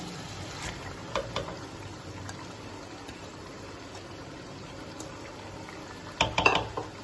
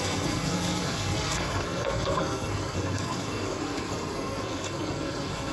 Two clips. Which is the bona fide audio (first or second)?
first